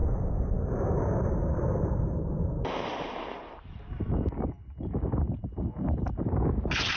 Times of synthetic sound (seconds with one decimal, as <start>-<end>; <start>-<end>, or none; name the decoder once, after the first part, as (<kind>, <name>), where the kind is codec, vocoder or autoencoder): none